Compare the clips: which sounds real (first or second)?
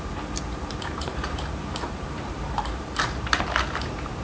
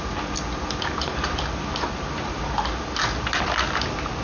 second